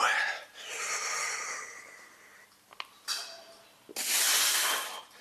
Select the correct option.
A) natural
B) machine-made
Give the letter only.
A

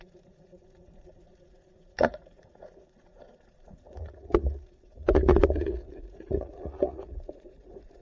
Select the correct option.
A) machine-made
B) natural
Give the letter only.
A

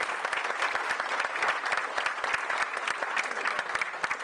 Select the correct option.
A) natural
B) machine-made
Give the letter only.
A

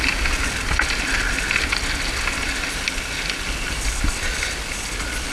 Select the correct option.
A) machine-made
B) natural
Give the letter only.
B